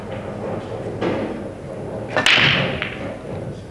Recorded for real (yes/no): yes